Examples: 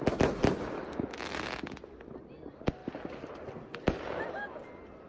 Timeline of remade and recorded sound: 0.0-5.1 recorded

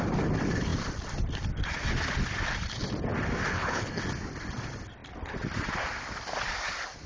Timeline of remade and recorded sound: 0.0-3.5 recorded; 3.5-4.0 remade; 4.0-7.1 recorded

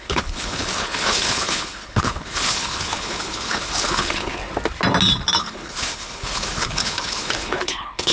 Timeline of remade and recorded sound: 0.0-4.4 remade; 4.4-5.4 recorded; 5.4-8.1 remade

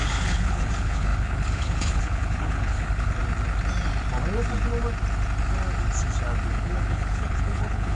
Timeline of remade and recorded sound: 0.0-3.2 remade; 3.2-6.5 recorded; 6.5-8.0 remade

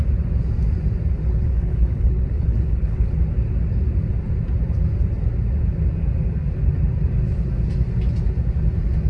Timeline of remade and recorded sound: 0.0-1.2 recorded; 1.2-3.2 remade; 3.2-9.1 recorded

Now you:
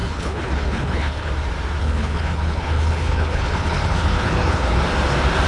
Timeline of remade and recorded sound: 0.0-1.3 remade; 1.3-1.8 recorded; 1.8-4.8 remade; 4.8-5.5 recorded

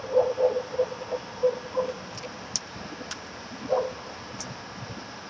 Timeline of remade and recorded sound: 0.0-5.3 recorded

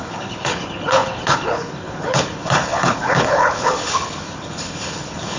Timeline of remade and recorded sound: 0.0-5.4 remade